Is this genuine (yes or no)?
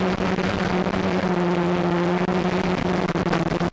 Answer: yes